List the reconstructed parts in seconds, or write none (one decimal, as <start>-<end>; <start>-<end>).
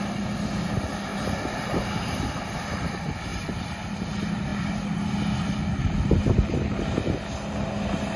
1.1-2.3; 3.3-4.1